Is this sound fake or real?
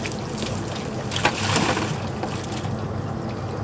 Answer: real